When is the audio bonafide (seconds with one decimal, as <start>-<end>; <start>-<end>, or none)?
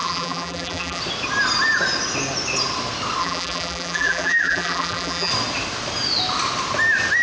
1.0-3.2; 5.3-7.2